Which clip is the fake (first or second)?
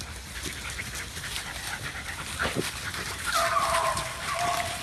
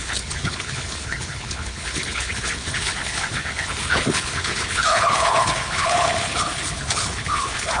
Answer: second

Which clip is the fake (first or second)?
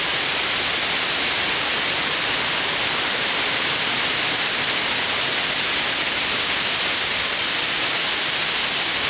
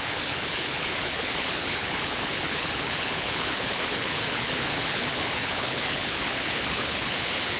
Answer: second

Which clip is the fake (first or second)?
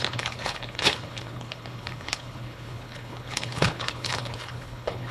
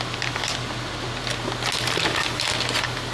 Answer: first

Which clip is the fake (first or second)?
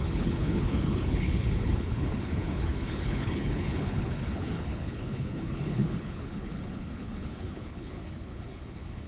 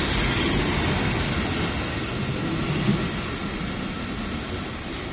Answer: first